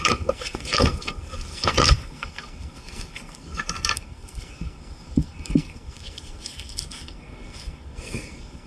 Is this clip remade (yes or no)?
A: yes